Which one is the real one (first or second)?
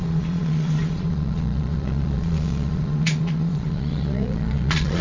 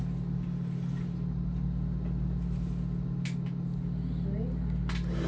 second